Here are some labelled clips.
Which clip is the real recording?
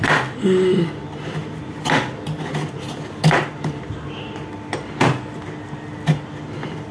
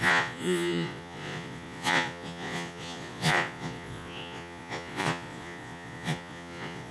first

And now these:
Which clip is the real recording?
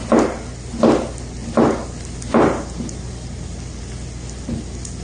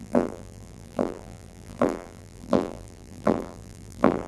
first